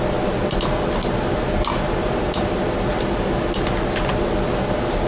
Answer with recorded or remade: recorded